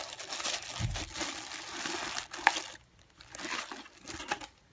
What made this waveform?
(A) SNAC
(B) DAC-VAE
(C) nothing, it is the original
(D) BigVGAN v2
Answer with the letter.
C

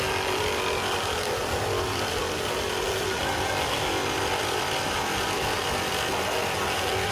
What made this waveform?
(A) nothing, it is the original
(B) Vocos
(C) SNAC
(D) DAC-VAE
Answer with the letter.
A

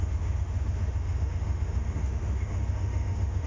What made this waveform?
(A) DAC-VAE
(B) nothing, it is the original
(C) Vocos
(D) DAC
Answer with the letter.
A